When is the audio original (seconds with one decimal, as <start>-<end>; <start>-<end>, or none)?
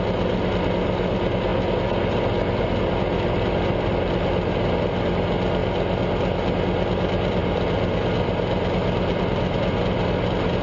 0.0-10.6